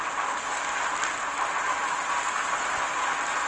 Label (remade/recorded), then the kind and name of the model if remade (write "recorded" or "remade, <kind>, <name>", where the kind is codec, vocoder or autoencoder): recorded